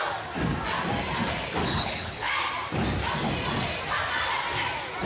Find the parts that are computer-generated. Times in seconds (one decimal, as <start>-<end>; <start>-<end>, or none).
1.6-2.3